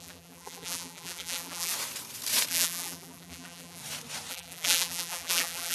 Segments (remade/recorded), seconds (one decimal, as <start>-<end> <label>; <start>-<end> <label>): 0.0-1.7 remade; 1.7-2.5 recorded; 2.5-3.8 remade; 3.8-4.3 recorded; 4.3-5.7 remade